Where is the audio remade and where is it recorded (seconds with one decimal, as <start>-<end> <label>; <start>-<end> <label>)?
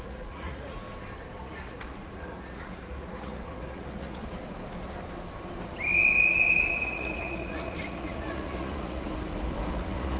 0.0-0.8 remade; 0.8-1.4 recorded; 1.4-4.2 remade; 4.2-6.7 recorded; 6.7-9.1 remade; 9.1-9.7 recorded; 9.7-10.2 remade